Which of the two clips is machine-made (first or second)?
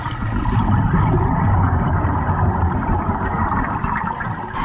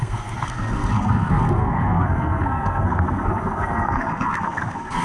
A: second